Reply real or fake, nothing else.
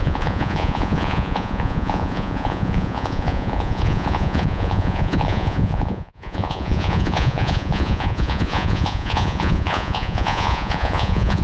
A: fake